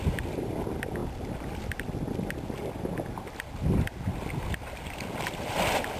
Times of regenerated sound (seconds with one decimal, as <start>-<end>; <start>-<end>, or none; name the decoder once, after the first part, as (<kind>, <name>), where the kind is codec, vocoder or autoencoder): none